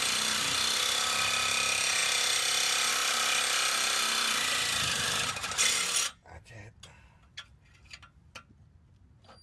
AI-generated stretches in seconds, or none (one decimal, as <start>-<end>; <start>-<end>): none